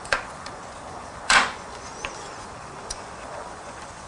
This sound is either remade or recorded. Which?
remade